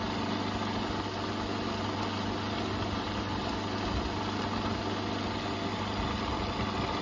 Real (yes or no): yes